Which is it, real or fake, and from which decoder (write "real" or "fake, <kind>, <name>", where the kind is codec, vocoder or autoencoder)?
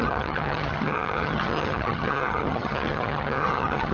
fake, vocoder, HiFi-GAN